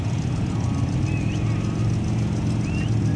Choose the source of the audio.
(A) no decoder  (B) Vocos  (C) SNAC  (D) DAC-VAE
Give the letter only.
A